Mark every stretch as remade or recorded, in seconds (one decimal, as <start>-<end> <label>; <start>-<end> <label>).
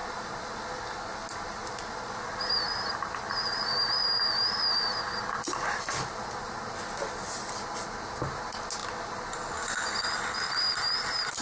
0.0-11.4 recorded